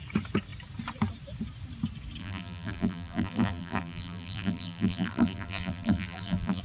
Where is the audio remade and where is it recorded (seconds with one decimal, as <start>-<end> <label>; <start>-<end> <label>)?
0.0-2.2 recorded; 2.2-6.6 remade

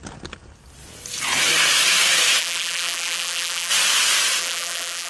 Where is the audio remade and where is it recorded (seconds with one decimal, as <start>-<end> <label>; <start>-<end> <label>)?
0.0-2.4 recorded; 2.4-3.7 remade; 3.7-4.4 recorded; 4.4-5.1 remade

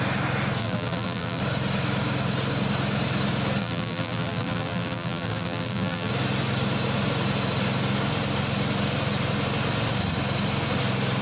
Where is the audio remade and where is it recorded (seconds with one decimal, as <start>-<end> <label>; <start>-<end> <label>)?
0.0-0.6 recorded; 0.6-1.4 remade; 1.4-3.6 recorded; 3.6-6.1 remade; 6.1-11.2 recorded

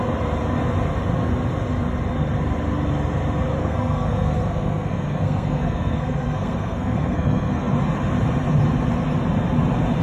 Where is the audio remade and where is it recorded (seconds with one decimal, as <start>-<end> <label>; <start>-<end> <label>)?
0.0-3.6 recorded; 3.6-7.8 remade; 7.8-10.0 recorded

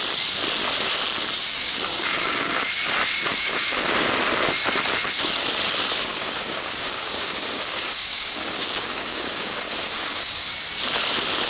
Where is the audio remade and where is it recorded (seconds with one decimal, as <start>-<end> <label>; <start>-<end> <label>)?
0.0-1.5 recorded; 1.5-2.5 remade; 2.5-3.3 recorded; 3.3-4.1 remade; 4.1-6.1 recorded; 6.1-10.5 remade; 10.5-11.5 recorded

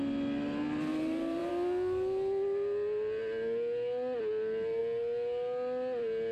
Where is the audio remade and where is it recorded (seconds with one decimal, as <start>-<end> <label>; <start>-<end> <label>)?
0.0-0.9 recorded; 0.9-1.5 remade; 1.5-6.3 recorded

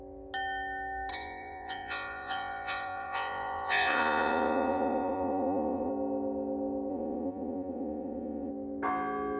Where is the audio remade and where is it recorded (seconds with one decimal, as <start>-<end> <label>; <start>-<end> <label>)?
0.0-1.1 recorded; 1.1-5.9 remade; 5.9-6.9 recorded; 6.9-8.5 remade; 8.5-9.4 recorded